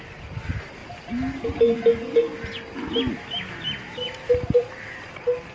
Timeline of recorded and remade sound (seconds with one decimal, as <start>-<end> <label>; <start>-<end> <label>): 0.0-5.5 recorded